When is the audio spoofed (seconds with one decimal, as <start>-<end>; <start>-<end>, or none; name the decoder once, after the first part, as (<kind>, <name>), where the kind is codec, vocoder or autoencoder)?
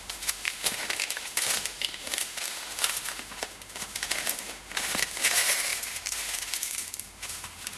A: 0.0-7.8 (autoencoder, DAC-VAE)